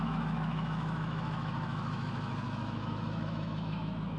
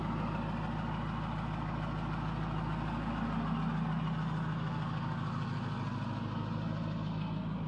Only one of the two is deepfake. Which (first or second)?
first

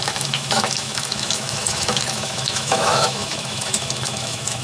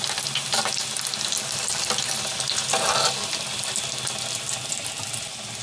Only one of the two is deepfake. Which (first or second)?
first